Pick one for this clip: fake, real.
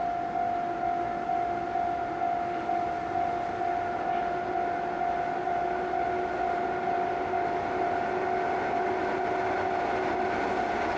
real